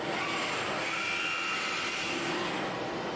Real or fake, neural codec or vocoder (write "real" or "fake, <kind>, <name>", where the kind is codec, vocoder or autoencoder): real